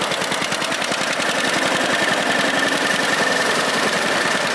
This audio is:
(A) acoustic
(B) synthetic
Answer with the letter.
A